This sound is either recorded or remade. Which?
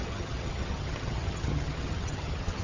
remade